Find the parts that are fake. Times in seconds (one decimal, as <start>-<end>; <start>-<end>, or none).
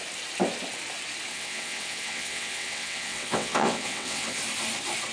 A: 1.3-4.4